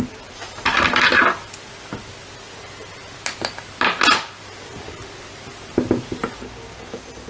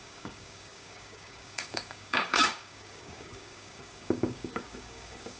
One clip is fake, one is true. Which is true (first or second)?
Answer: first